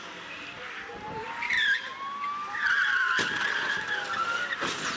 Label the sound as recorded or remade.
recorded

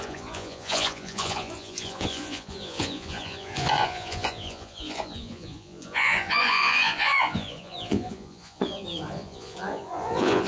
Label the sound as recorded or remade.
remade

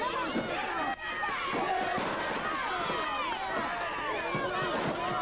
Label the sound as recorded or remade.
recorded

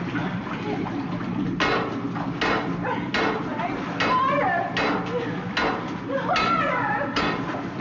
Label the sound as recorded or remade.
recorded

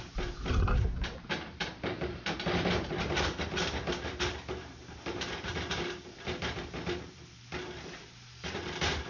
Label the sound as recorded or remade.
remade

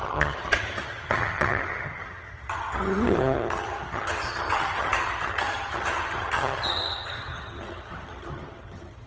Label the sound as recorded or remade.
remade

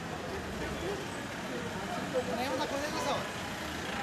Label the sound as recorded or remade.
recorded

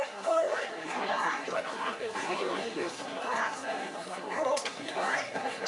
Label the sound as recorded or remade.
remade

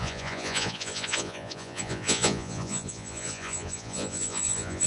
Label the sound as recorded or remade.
remade